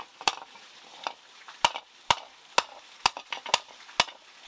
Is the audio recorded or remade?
recorded